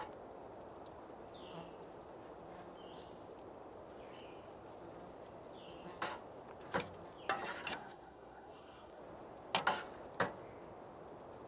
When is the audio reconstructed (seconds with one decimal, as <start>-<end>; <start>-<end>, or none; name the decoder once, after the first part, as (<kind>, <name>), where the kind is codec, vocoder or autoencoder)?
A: 7.7-9.0 (codec, SNAC)